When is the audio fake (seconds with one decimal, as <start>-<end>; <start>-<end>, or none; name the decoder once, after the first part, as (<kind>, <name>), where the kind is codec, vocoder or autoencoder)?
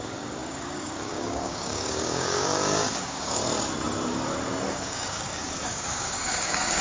0.0-3.4 (codec, DAC); 4.7-6.8